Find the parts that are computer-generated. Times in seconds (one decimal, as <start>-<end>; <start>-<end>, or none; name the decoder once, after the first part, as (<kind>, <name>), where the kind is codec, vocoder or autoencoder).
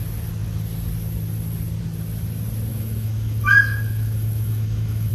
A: 2.7-5.1 (autoencoder, DAC-VAE)